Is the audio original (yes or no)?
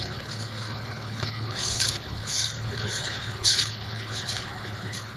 no